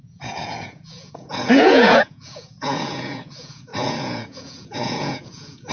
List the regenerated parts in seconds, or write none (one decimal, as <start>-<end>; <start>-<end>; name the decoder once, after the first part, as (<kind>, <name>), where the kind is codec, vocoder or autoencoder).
0.0-5.7 (vocoder, Vocos)